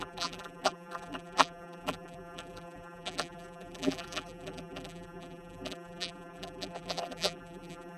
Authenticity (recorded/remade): remade